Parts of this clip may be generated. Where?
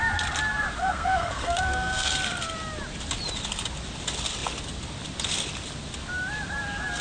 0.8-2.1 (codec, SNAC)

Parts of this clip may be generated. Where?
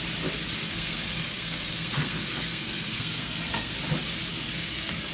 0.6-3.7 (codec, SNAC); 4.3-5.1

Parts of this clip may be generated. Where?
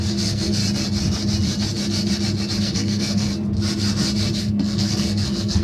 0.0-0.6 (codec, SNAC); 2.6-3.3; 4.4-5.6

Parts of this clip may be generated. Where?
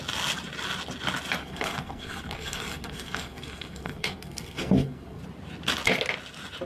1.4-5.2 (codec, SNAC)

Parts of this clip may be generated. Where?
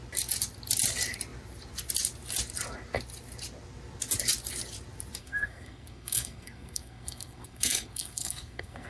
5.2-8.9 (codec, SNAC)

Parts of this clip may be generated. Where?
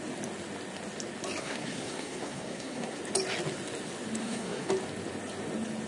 1.4-3.0 (codec, SNAC); 4.2-4.7